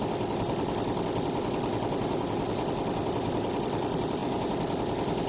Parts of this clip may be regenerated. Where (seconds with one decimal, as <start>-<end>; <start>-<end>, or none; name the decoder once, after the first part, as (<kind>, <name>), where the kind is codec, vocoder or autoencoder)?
none